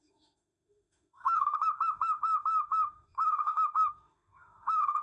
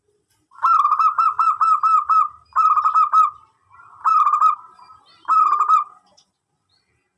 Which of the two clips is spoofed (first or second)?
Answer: first